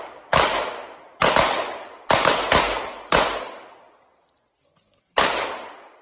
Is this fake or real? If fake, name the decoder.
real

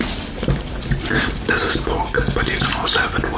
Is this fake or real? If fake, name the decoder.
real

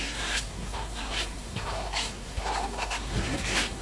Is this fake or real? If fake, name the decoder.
fake, codec, SNAC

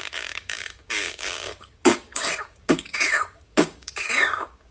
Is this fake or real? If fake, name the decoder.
fake, codec, DAC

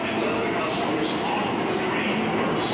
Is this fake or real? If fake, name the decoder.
real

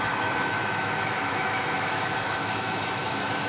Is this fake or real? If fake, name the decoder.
fake, autoencoder, DAC-VAE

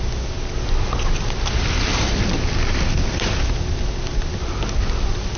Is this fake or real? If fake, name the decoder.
real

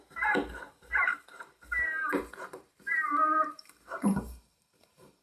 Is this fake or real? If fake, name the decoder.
fake, vocoder, BigVGAN v2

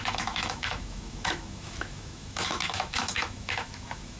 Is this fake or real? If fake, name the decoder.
fake, autoencoder, DAC-VAE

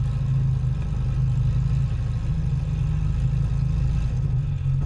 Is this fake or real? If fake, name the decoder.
real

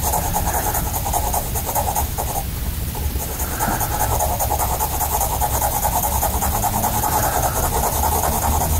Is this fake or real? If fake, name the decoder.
real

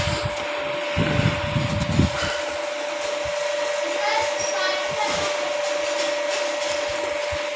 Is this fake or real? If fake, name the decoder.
real